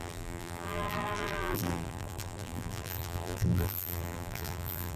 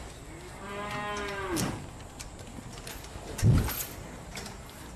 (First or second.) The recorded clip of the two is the second